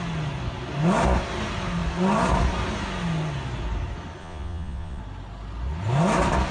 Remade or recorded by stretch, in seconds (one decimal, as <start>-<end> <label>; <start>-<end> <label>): 0.0-4.2 recorded; 4.2-5.0 remade; 5.0-6.5 recorded